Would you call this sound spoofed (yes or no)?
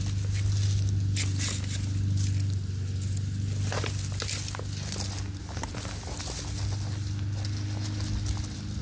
no